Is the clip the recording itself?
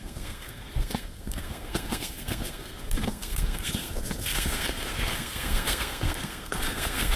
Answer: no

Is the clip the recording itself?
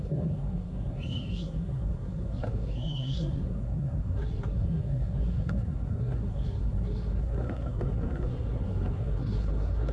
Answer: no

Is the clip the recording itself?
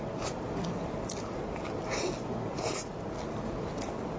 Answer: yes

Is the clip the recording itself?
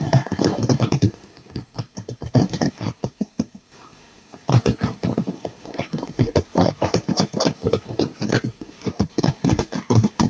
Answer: no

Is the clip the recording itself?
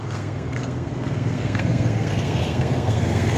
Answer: no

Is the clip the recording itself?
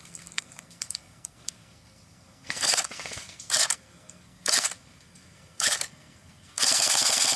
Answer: no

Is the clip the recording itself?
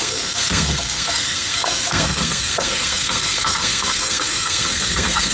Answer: no